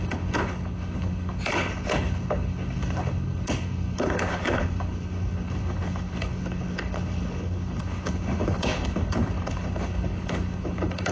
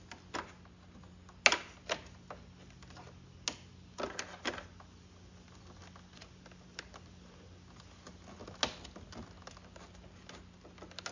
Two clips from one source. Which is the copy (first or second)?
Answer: first